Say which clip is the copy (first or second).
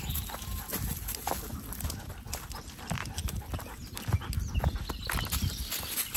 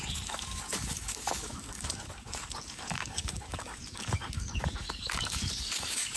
second